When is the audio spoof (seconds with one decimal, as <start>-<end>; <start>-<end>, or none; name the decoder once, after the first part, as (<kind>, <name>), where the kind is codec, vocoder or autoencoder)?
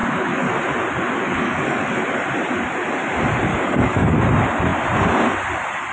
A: 0.0-0.6 (codec, DAC); 1.2-2.0; 3.5-4.2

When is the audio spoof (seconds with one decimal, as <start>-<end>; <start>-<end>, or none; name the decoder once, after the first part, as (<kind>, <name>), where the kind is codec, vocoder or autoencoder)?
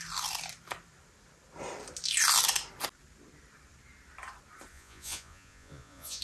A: 4.7-6.2 (vocoder, Vocos)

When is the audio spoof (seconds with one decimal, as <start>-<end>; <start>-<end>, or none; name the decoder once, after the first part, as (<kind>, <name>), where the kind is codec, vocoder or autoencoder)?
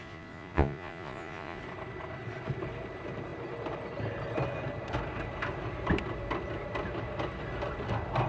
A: 0.0-1.6 (vocoder, Vocos)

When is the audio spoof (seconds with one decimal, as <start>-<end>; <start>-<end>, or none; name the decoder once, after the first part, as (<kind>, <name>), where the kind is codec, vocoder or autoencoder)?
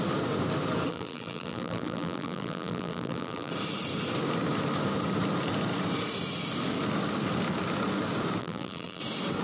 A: 0.9-3.5 (vocoder, BigVGAN v2); 8.4-9.0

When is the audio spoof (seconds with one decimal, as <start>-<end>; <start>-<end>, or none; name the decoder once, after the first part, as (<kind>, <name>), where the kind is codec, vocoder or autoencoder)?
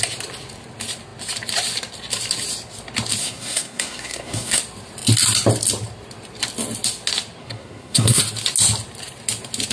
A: 3.2-4.6 (codec, SNAC); 7.4-8.2